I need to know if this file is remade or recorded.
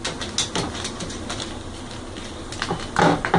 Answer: recorded